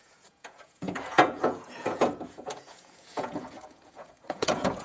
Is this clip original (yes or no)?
no